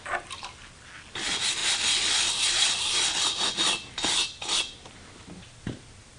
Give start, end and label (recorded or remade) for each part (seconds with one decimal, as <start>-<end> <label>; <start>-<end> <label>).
0.0-6.2 recorded